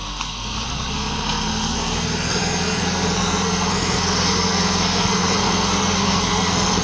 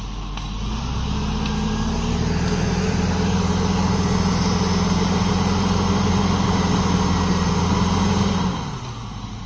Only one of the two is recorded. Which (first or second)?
second